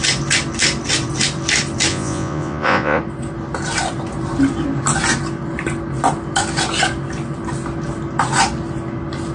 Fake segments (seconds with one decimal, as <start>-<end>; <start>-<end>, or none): 1.9-3.0